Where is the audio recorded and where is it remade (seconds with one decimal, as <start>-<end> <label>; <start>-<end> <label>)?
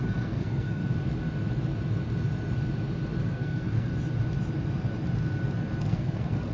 0.0-0.8 remade; 0.8-3.2 recorded; 3.2-3.9 remade; 3.9-5.8 recorded; 5.8-6.5 remade